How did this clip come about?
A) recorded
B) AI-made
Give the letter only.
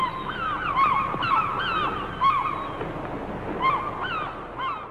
A